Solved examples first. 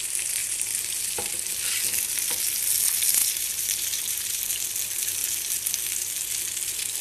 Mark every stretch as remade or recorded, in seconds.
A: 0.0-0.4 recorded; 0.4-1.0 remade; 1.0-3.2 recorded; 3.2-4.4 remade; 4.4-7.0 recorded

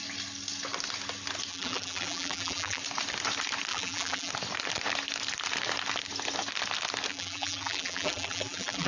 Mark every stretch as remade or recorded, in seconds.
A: 0.0-1.5 recorded; 1.5-2.8 remade; 2.8-3.7 recorded; 3.7-4.3 remade; 4.3-7.1 recorded; 7.1-8.9 remade

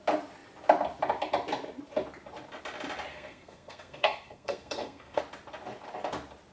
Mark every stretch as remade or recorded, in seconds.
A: 0.0-3.1 recorded; 3.1-5.2 remade; 5.2-6.5 recorded

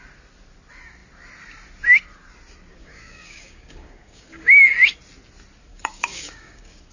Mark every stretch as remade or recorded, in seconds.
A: 0.0-2.8 recorded; 2.8-4.7 remade; 4.7-5.7 recorded; 5.7-6.9 remade

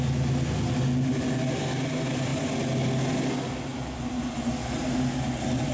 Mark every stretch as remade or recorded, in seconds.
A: 0.0-5.7 recorded

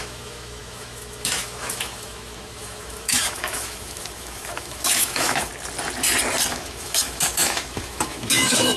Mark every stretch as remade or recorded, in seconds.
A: 0.0-5.5 remade; 5.5-6.5 recorded; 6.5-8.8 remade